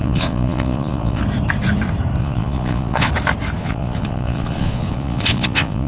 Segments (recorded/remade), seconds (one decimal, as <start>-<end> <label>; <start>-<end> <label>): 0.0-1.2 remade; 1.2-2.2 recorded; 2.2-3.1 remade; 3.1-3.6 recorded; 3.6-5.9 remade

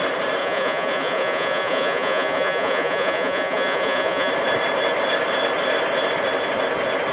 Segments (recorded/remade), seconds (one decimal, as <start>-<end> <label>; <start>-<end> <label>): 0.0-0.4 recorded; 0.4-4.3 remade; 4.3-7.1 recorded